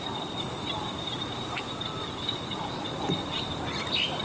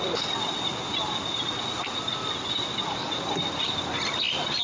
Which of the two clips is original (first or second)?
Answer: second